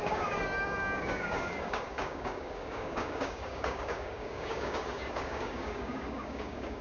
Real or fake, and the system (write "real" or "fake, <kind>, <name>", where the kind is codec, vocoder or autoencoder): fake, codec, DAC